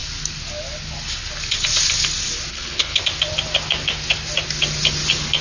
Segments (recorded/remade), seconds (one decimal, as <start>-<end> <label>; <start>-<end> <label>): 0.0-2.5 recorded; 2.5-3.0 remade; 3.0-5.4 recorded